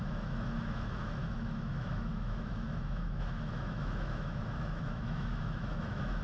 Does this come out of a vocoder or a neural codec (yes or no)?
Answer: yes